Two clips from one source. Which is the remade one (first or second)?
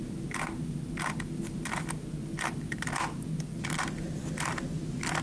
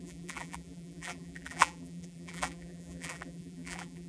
second